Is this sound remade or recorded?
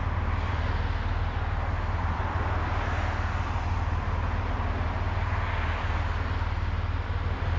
recorded